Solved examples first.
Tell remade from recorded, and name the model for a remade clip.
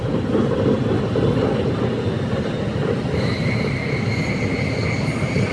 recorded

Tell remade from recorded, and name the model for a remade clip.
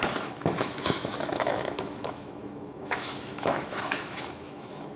remade, autoencoder, DAC-VAE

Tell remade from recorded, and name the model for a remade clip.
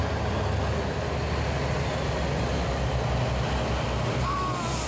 recorded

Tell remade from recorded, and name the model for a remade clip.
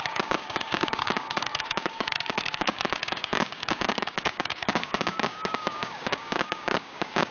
remade, codec, DAC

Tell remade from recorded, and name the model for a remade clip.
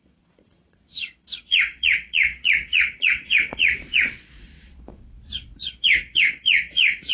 remade, vocoder, Vocos